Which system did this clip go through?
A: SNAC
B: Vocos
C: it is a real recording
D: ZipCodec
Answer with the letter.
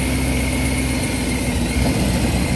C